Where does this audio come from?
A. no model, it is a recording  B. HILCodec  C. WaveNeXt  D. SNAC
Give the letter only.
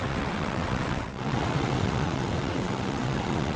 C